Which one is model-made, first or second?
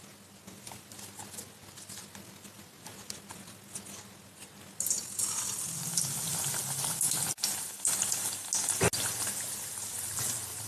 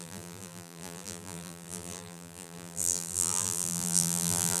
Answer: second